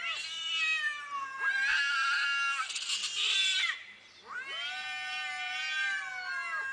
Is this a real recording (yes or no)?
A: yes